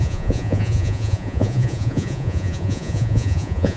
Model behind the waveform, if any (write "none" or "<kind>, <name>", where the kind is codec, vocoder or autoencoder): vocoder, Vocos